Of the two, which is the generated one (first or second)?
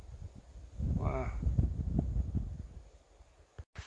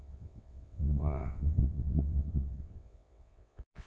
second